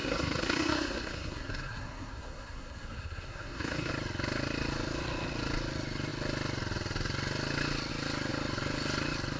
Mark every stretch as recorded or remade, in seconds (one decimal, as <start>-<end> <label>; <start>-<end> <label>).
0.0-3.9 remade; 3.9-9.4 recorded